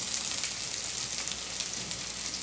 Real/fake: fake